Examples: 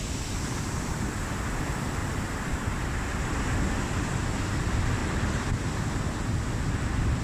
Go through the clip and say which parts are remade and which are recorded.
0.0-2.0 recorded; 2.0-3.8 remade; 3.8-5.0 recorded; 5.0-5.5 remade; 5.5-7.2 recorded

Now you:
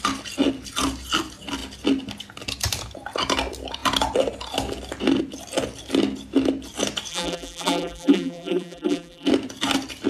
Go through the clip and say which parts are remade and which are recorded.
0.0-7.1 recorded; 7.1-9.3 remade; 9.3-10.1 recorded

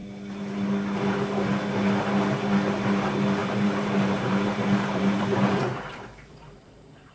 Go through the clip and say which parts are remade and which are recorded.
0.0-3.4 recorded; 3.4-7.1 remade

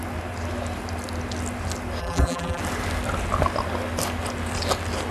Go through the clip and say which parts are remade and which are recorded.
0.0-2.0 recorded; 2.0-2.6 remade; 2.6-5.1 recorded

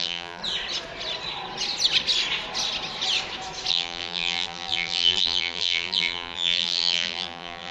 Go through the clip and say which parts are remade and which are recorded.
0.0-0.4 remade; 0.4-3.7 recorded; 3.7-7.7 remade